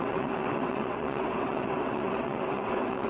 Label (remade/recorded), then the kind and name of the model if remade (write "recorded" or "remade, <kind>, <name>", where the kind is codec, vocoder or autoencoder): remade, vocoder, WaveNeXt